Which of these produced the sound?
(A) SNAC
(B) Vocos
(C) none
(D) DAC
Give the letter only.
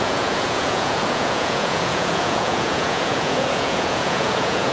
B